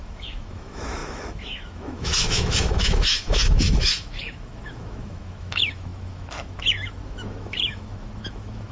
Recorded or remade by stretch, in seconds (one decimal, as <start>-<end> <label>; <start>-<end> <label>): 0.0-8.7 remade